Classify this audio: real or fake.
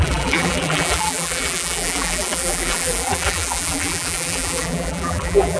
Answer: fake